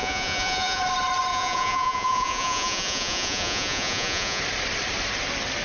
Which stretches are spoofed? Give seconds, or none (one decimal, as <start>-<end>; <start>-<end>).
0.0-0.8; 1.3-4.4